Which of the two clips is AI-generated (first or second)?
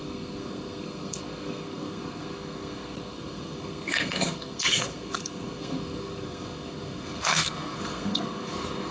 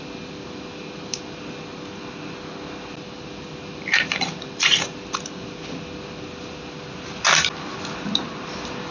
first